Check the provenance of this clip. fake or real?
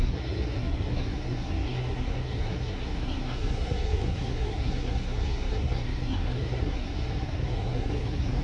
fake